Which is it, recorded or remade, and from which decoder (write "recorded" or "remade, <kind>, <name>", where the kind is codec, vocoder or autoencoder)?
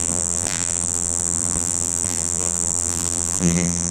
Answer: remade, vocoder, BigVGAN v2